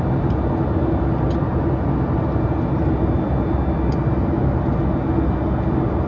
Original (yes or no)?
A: yes